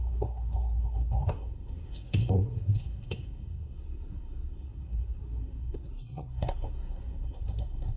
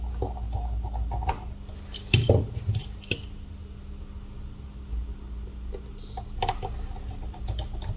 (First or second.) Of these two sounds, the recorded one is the second